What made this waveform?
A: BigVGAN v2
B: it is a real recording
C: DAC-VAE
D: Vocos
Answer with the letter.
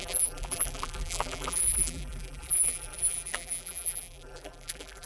A